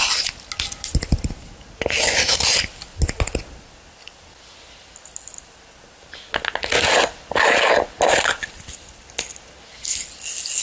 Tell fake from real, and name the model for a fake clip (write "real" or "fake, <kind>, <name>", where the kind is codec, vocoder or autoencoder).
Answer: real